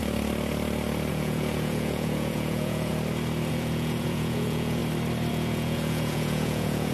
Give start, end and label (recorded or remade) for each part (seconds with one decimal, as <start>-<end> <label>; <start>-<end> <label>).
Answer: 0.0-1.1 recorded; 1.1-2.9 remade; 2.9-3.5 recorded; 3.5-4.8 remade; 4.8-5.3 recorded; 5.3-6.9 remade